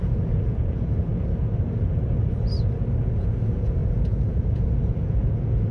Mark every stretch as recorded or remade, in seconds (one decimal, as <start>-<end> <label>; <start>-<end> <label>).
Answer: 0.0-1.1 remade; 1.1-3.0 recorded; 3.0-5.7 remade